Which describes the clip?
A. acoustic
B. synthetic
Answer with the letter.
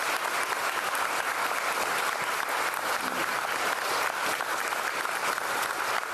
A